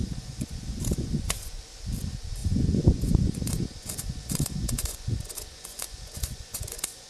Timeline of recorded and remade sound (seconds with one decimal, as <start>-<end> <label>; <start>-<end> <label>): 0.0-1.6 remade; 1.6-2.4 recorded; 2.4-7.1 remade